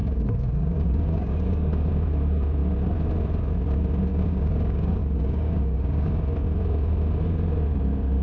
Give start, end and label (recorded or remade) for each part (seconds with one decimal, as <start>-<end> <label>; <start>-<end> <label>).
0.0-1.7 remade; 1.7-4.1 recorded; 4.1-6.1 remade; 6.1-8.2 recorded